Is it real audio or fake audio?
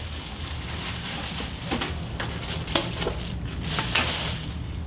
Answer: real